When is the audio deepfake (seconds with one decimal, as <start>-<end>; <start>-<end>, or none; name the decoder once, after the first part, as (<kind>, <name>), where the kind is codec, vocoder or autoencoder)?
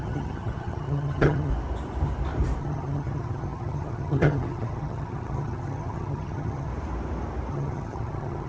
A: 0.0-1.5 (vocoder, HiFi-GAN); 2.6-6.7; 7.5-8.5